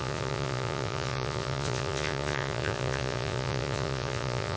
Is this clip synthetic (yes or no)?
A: yes